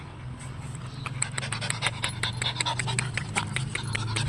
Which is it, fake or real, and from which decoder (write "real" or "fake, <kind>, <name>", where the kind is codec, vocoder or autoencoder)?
real